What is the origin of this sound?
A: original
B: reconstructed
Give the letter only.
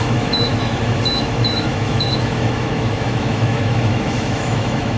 B